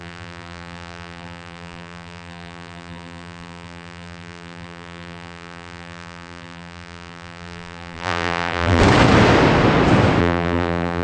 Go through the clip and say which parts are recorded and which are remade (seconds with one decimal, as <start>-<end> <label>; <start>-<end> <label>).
0.0-8.8 remade; 8.8-10.2 recorded; 10.2-11.0 remade